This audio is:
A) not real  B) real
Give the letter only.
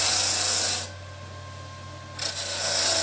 B